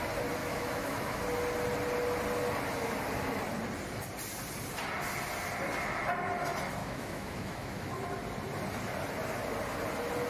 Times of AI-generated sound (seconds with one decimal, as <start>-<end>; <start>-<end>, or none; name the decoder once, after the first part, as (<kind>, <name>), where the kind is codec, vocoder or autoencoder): 0.4-1.2 (autoencoder, DAC-VAE); 6.8-7.9